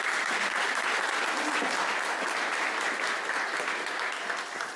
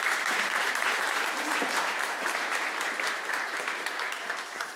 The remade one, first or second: second